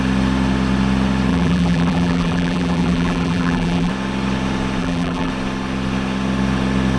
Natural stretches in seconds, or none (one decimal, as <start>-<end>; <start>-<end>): 0.0-1.3; 3.9-4.8; 5.3-7.0